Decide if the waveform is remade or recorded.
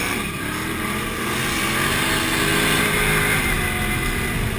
recorded